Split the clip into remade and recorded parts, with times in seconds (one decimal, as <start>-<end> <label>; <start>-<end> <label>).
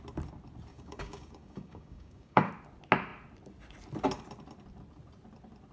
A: 0.0-0.7 recorded; 0.7-2.5 remade; 2.5-5.7 recorded